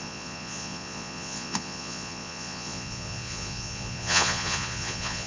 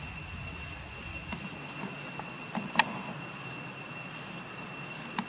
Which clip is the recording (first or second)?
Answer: second